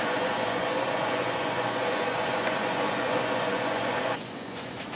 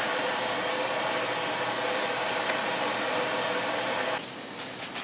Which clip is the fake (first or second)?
first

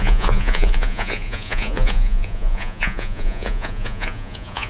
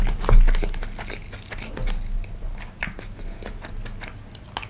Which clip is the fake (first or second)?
first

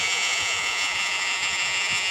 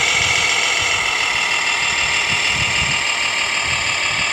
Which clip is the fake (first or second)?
first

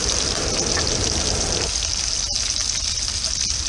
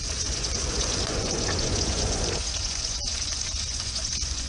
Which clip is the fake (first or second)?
second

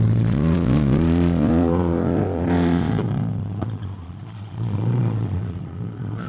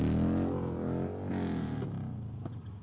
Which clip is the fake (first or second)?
first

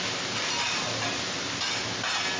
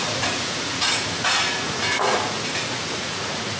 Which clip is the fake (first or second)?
second